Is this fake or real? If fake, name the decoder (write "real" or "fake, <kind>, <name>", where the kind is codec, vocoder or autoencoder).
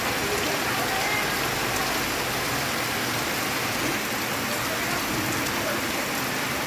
real